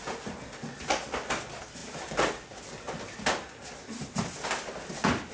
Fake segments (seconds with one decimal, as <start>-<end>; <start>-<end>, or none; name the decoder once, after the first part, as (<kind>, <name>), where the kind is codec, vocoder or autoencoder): none